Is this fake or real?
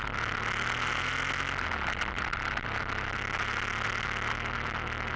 real